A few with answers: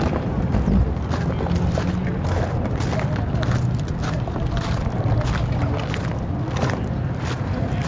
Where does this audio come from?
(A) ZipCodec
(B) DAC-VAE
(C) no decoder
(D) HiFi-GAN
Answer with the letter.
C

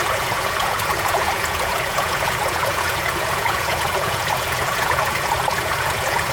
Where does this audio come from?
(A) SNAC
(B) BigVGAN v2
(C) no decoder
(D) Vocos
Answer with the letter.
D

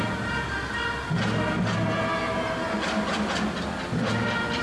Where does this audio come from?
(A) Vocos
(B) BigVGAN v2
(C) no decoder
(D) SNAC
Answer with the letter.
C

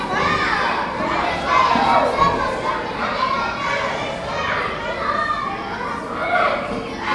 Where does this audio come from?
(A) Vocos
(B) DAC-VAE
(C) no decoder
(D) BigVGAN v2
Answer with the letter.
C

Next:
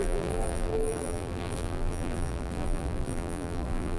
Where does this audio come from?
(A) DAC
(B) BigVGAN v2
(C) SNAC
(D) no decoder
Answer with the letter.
B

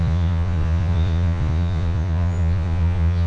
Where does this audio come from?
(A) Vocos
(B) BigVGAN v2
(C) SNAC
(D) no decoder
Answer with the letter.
A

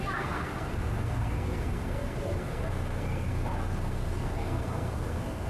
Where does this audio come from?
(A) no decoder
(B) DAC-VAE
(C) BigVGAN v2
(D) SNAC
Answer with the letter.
D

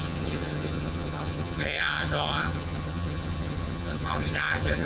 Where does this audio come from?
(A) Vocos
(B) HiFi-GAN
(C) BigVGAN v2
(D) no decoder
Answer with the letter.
B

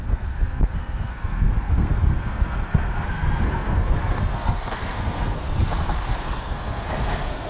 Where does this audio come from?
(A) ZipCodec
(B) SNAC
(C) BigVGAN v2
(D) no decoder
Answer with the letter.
B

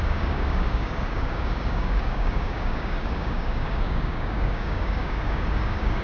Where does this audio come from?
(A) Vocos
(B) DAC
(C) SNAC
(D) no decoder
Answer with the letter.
B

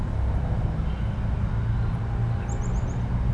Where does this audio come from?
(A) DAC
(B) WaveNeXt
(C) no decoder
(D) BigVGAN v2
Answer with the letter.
C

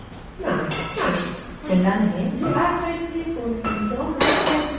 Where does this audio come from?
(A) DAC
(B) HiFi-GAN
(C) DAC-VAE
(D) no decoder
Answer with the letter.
D